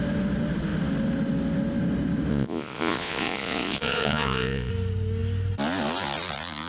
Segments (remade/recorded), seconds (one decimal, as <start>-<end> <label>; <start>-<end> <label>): 0.0-2.3 recorded; 2.3-4.7 remade; 4.7-6.7 recorded